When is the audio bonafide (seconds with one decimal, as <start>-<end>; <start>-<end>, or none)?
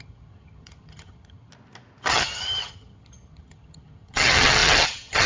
1.5-2.1